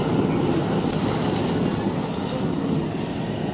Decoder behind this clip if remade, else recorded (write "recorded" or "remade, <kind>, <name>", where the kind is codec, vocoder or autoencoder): recorded